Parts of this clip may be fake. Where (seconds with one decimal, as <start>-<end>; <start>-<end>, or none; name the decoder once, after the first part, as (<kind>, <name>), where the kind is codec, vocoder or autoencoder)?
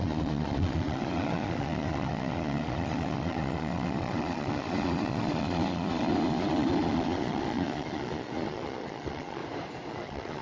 0.0-9.4 (vocoder, Vocos); 9.9-10.4